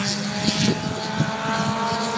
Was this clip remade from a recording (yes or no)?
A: no